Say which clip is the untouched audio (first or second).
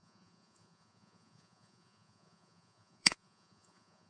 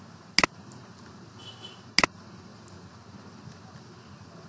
second